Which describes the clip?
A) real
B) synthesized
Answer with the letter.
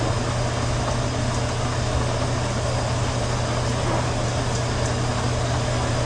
A